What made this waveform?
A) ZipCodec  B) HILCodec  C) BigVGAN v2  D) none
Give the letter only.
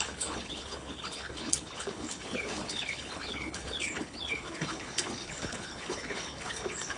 B